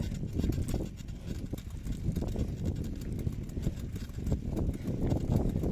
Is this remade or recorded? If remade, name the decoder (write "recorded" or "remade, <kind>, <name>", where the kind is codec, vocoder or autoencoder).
recorded